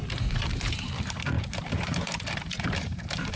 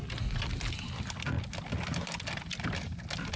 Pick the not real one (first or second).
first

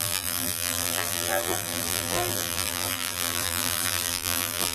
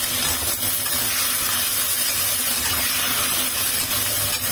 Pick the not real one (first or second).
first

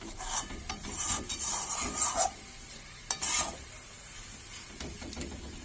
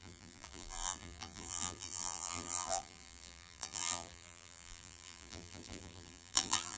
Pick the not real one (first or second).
second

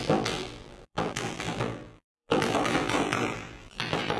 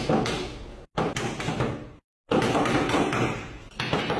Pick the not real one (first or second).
first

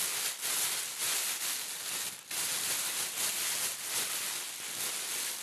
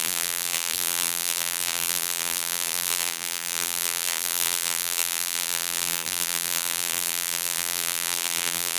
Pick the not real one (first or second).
second